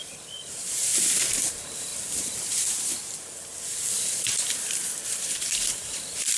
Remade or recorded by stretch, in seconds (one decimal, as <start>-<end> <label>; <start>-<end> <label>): 0.0-0.9 remade; 0.9-1.5 recorded; 1.5-1.9 remade; 1.9-5.4 recorded; 5.4-6.4 remade